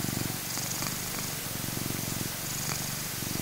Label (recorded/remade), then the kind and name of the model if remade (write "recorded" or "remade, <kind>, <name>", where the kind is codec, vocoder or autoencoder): recorded